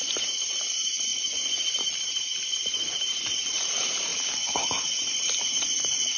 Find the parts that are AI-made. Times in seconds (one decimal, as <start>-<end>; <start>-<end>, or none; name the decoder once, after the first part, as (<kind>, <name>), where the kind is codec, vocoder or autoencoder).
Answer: 0.0-1.1 (vocoder, BigVGAN v2); 1.8-2.3; 2.9-6.2